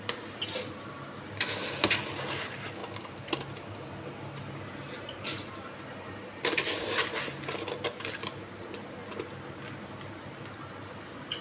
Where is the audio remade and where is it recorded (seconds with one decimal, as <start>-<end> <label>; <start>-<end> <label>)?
0.0-11.4 recorded